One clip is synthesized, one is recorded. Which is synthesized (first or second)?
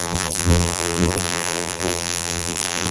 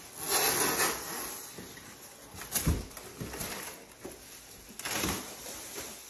first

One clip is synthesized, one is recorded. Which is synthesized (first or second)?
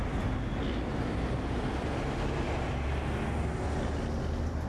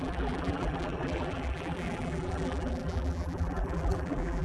second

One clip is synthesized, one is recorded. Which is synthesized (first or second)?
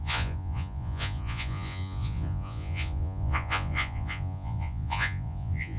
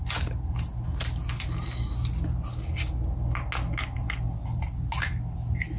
first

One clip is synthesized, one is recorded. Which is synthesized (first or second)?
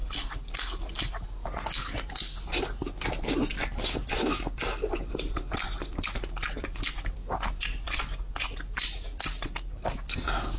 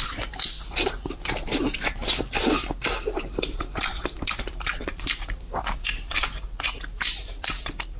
second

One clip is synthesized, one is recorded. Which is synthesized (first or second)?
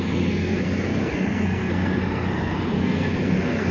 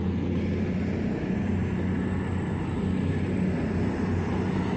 first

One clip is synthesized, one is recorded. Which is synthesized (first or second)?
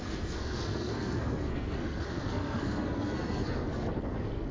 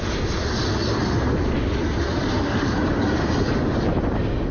first